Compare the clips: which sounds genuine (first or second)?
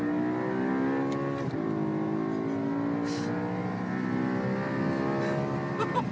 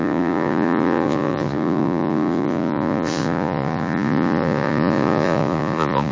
first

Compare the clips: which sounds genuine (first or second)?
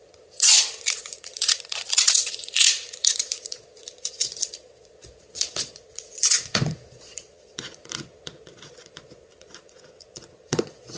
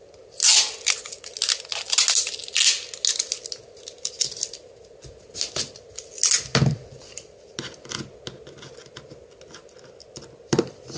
second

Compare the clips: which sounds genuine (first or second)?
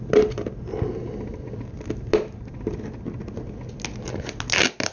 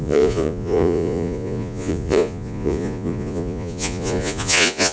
first